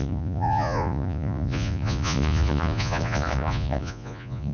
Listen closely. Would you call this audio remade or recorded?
remade